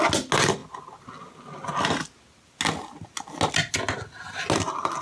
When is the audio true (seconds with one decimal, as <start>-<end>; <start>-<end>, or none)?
0.0-5.0